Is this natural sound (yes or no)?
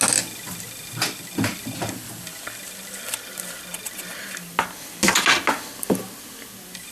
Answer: yes